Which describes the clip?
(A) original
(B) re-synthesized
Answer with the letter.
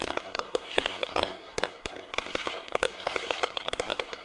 B